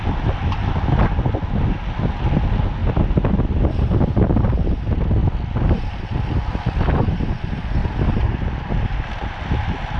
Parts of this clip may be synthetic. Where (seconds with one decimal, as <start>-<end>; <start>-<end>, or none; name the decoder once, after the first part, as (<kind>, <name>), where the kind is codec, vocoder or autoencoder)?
2.8-3.4 (vocoder, BigVGAN v2); 5.2-6.0; 7.8-8.7